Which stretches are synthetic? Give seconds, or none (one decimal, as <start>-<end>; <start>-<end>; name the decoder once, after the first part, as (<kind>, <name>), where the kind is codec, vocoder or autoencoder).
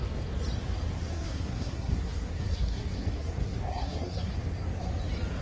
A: 1.1-4.3 (codec, SNAC)